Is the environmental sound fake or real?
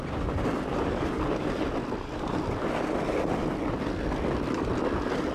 real